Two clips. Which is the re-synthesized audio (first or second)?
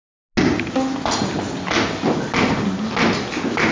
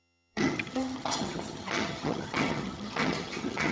second